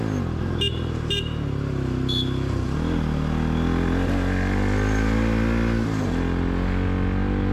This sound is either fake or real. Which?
real